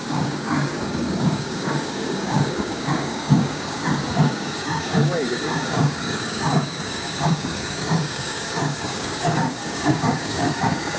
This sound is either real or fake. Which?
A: fake